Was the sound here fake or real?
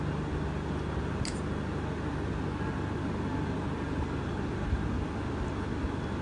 real